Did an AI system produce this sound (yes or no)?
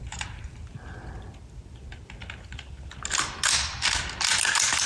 no